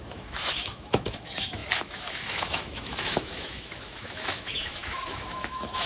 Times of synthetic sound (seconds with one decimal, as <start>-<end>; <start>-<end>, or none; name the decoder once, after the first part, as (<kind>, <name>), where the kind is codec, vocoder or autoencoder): 0.0-5.9 (autoencoder, DAC-VAE)